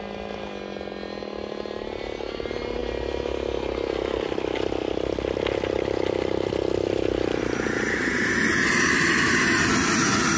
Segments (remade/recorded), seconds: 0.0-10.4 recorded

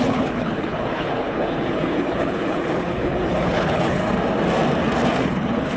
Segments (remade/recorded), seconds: 0.0-4.0 remade; 4.0-5.2 recorded; 5.2-5.8 remade

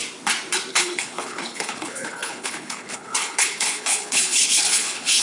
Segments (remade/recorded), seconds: 0.0-0.7 recorded; 0.7-5.2 remade

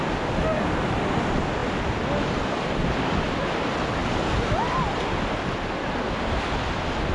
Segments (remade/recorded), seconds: 0.0-7.1 recorded

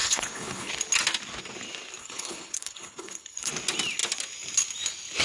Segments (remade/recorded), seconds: 0.0-0.7 remade; 0.7-2.0 recorded; 2.0-3.5 remade; 3.5-5.2 recorded

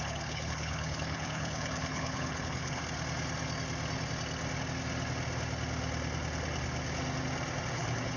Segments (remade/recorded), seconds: 0.0-2.8 remade; 2.8-7.7 recorded; 7.7-8.2 remade

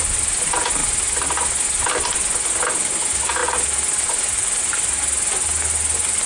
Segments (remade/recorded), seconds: 0.0-6.3 recorded

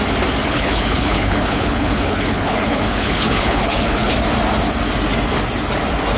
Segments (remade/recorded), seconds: 0.0-0.4 recorded; 0.4-4.1 remade; 4.1-6.2 recorded